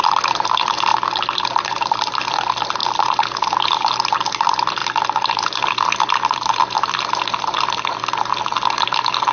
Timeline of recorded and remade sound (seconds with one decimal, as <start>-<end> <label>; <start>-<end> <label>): 0.0-9.3 recorded